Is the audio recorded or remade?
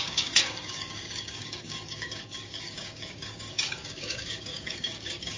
remade